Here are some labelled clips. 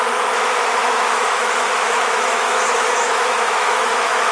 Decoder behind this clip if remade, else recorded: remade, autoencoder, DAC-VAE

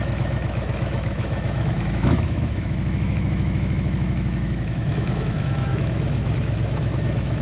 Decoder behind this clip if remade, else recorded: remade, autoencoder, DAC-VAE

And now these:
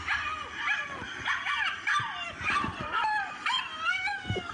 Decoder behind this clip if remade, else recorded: recorded